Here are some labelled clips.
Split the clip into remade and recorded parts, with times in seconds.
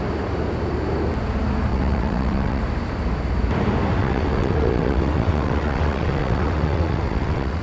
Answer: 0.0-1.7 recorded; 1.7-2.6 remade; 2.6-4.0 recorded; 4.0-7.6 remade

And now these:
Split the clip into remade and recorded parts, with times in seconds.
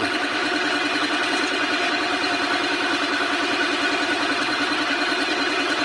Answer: 0.0-2.1 remade; 2.1-4.3 recorded; 4.3-5.8 remade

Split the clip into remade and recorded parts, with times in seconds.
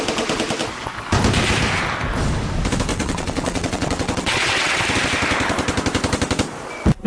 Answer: 0.0-2.9 recorded; 2.9-4.8 remade; 4.8-7.1 recorded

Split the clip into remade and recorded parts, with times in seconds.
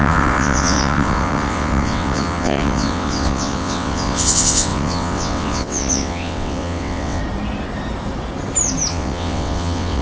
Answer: 0.0-7.2 remade; 7.2-8.9 recorded; 8.9-10.0 remade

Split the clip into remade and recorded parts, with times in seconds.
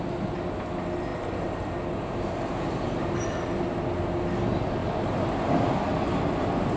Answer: 0.0-6.8 recorded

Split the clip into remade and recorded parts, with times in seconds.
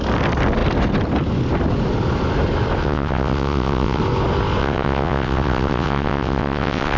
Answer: 0.0-2.8 recorded; 2.8-4.0 remade; 4.0-4.6 recorded; 4.6-7.0 remade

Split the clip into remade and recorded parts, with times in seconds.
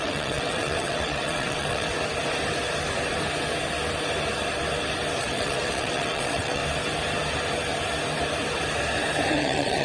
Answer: 0.0-1.9 remade; 1.9-5.2 recorded; 5.2-6.6 remade; 6.6-9.3 recorded; 9.3-9.8 remade